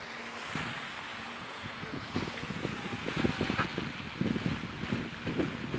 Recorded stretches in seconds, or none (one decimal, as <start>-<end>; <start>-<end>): 0.0-1.1; 3.2-5.8